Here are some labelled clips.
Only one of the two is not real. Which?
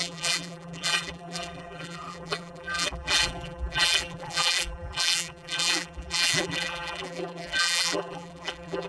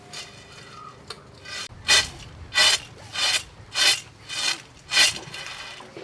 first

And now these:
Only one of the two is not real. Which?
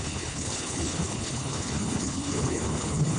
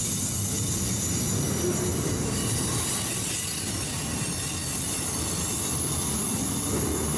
first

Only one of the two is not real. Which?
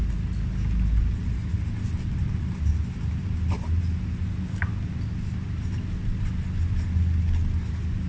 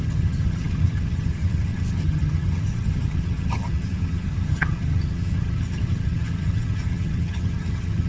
second